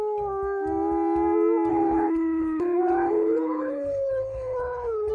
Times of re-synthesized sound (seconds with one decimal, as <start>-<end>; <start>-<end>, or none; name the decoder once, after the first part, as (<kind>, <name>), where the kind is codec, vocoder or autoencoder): 1.7-5.1 (codec, HILCodec)